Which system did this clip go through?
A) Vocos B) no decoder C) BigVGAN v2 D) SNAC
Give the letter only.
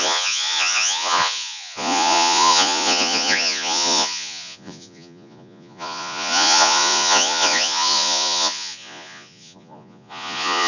A